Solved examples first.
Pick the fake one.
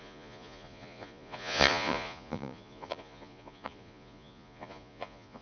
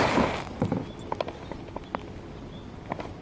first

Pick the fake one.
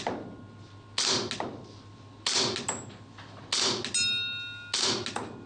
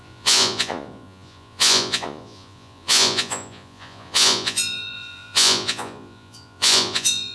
second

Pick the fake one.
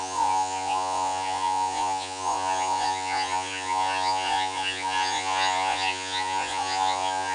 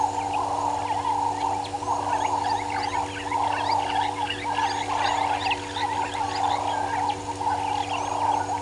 first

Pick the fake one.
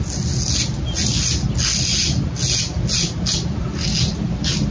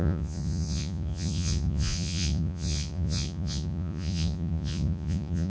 second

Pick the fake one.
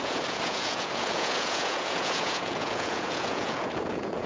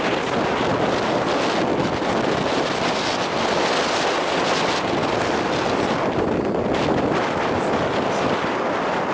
first